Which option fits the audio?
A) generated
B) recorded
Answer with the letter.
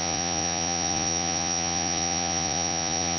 A